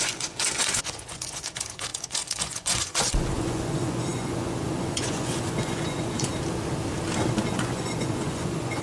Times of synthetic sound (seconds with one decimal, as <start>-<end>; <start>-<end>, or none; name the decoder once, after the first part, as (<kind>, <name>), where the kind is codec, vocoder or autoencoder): 0.0-6.3 (vocoder, Vocos); 7.3-8.8